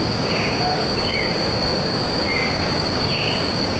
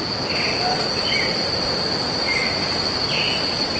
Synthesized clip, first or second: first